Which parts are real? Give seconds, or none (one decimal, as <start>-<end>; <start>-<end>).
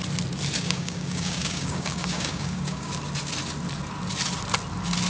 0.0-0.6; 2.9-5.1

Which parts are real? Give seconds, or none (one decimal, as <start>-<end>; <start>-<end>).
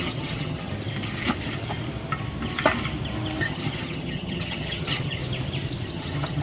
0.7-3.4; 5.2-5.9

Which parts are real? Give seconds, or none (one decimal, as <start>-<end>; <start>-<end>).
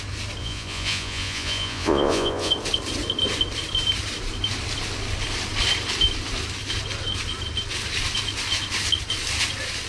0.0-0.4; 2.5-9.9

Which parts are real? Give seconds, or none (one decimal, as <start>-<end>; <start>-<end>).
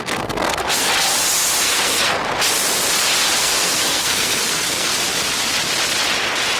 0.9-1.6; 2.2-3.4; 4.9-6.6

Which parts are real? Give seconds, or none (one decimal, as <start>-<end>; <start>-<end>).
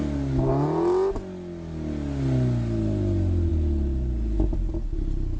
0.0-5.4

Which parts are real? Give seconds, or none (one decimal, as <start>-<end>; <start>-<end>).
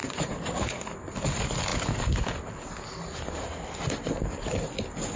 0.8-5.2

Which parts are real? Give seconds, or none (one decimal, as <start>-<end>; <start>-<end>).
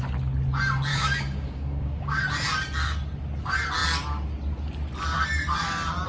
0.0-0.9; 2.2-6.1